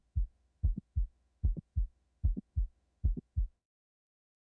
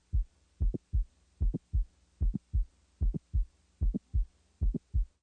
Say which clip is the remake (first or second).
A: first